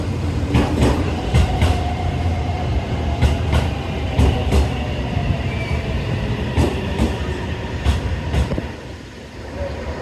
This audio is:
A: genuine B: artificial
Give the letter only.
B